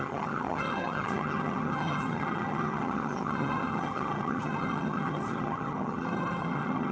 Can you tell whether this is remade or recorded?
remade